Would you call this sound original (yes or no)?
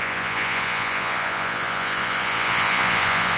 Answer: no